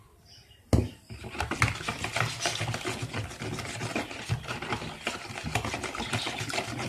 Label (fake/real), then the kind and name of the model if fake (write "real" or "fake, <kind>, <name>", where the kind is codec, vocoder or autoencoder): real